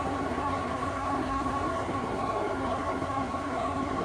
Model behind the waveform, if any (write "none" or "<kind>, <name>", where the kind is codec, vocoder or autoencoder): codec, SNAC